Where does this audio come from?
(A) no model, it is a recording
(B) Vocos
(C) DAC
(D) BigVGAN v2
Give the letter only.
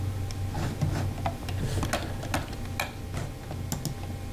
A